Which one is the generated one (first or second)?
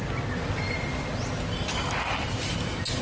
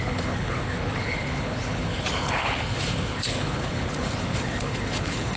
second